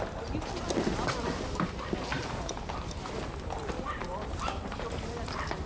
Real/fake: real